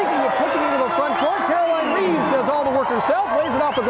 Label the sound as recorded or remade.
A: recorded